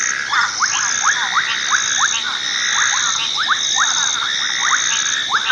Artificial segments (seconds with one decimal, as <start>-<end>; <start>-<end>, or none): none